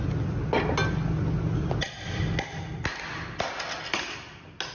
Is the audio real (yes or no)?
yes